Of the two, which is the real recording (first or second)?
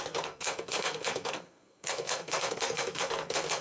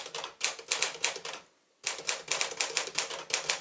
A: second